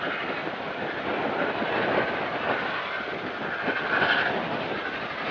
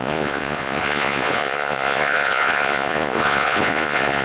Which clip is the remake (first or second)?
second